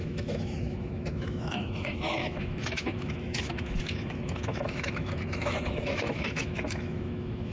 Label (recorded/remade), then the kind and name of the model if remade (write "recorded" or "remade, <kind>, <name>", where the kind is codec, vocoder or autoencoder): remade, autoencoder, DAC-VAE